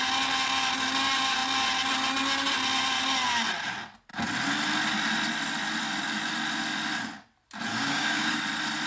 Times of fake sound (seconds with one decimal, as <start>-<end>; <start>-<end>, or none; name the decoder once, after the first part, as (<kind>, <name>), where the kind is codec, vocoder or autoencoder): 7.7-8.4 (codec, DAC)